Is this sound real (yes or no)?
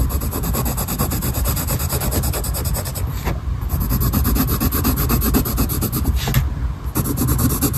yes